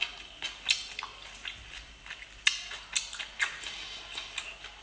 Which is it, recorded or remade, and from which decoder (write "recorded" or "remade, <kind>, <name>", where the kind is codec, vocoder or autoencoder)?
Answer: recorded